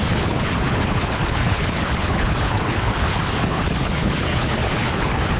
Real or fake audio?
fake